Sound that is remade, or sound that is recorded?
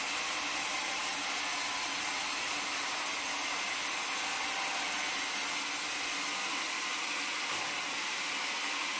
recorded